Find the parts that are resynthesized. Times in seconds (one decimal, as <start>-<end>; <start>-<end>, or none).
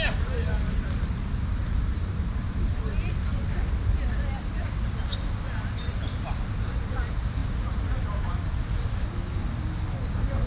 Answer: 7.4-9.0